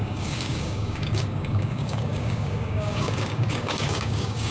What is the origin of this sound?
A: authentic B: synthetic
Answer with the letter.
B